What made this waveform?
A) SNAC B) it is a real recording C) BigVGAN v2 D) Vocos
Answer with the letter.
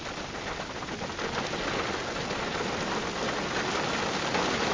B